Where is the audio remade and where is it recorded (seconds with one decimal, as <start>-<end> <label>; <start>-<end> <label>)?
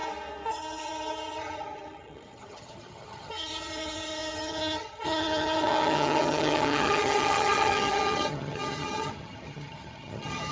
0.0-0.5 recorded; 0.5-10.5 remade